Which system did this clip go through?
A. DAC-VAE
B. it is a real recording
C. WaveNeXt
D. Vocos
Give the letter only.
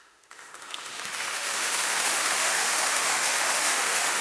A